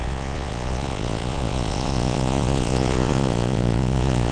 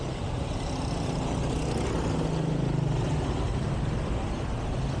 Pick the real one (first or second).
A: second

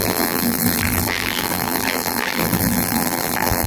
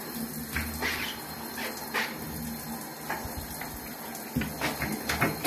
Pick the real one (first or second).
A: second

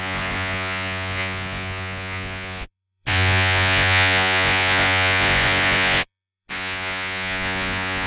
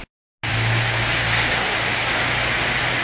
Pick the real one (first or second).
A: second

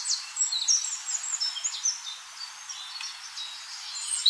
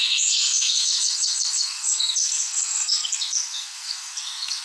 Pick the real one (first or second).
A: first